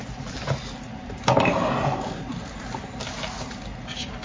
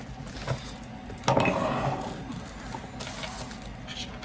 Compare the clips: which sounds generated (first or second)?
first